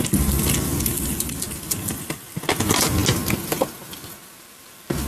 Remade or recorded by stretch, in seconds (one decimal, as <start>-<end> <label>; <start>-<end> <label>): 0.0-5.1 recorded